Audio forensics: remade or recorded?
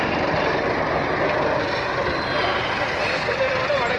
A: recorded